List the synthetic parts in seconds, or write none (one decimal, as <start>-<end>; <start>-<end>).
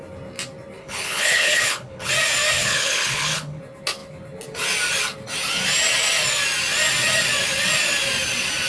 0.8-2.1; 2.6-3.6